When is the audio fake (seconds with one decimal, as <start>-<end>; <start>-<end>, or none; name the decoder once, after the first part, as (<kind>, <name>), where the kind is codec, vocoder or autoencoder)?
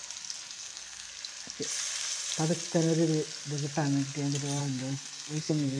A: 0.5-1.1 (codec, SNAC); 4.6-5.8